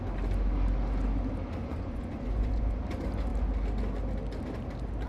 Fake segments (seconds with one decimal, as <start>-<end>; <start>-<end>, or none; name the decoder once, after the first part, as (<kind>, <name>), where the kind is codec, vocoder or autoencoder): 1.6-2.8 (vocoder, Vocos)